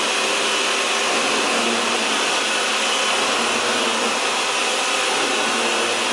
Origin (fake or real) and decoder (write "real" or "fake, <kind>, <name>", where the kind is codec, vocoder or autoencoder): real